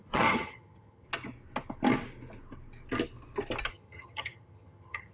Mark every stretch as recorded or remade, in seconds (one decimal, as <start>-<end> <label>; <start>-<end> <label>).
0.0-1.1 remade; 1.1-3.7 recorded; 3.7-5.1 remade